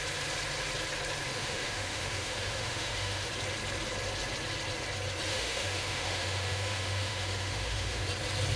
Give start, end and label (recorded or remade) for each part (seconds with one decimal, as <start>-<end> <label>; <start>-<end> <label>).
0.0-1.3 recorded; 1.3-3.3 remade; 3.3-5.3 recorded; 5.3-8.1 remade; 8.1-8.6 recorded